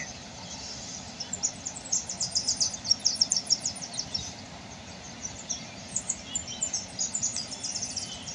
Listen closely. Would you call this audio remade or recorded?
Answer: recorded